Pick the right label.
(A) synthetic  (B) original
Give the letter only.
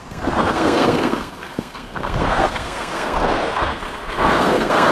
A